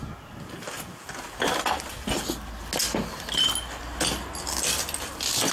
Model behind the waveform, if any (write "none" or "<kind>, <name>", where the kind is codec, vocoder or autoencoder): none